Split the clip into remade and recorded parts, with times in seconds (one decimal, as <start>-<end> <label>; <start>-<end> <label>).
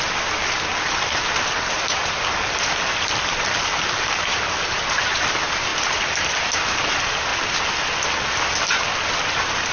0.0-0.7 recorded; 0.7-5.1 remade; 5.1-9.7 recorded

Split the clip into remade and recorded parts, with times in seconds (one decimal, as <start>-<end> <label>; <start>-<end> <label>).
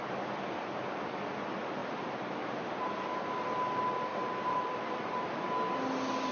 0.0-1.8 recorded; 1.8-3.4 remade; 3.4-4.1 recorded; 4.1-5.3 remade; 5.3-6.3 recorded